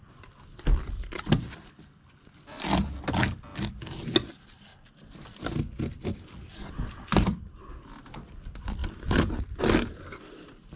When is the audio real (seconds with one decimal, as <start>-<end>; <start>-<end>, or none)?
0.0-8.8; 9.6-10.8